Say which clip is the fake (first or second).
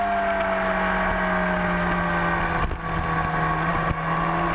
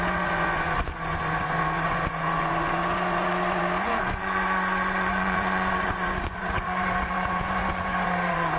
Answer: second